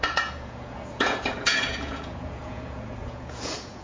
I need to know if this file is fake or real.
fake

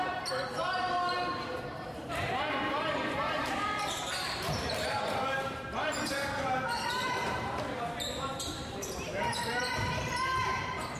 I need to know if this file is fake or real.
fake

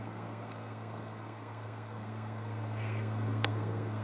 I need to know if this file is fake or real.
fake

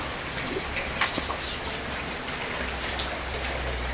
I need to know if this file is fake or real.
real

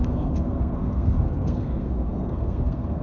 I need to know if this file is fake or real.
fake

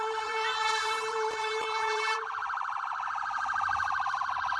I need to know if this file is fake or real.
fake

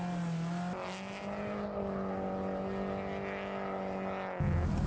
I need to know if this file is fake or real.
real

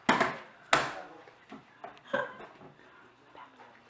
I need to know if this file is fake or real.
real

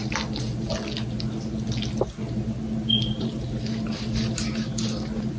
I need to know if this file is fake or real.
real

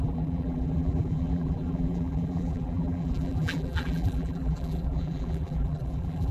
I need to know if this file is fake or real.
fake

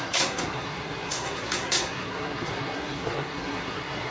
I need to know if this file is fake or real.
fake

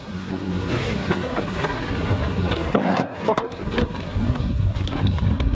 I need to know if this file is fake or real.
fake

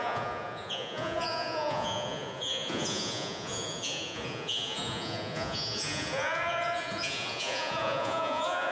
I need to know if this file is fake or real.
fake